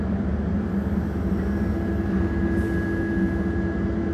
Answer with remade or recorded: recorded